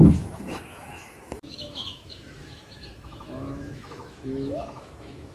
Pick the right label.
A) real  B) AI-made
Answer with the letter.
B